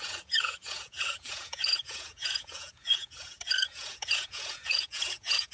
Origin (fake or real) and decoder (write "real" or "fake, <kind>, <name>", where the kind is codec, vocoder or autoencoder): fake, vocoder, Vocos